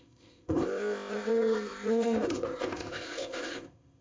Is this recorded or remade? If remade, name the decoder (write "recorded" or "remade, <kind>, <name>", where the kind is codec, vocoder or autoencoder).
remade, codec, ZipCodec